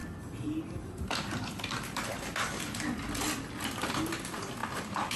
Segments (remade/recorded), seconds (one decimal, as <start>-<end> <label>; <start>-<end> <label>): 0.0-2.2 remade; 2.2-4.6 recorded; 4.6-5.2 remade